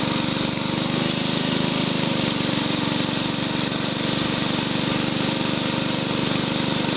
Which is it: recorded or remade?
recorded